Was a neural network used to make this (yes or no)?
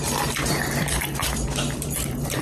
yes